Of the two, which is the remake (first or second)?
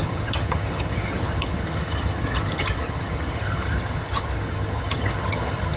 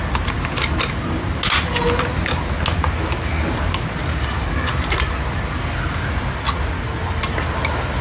first